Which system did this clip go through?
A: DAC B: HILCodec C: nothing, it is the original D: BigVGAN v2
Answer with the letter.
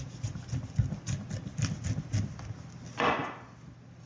C